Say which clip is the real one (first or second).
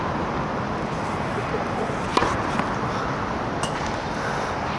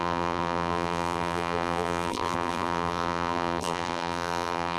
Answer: first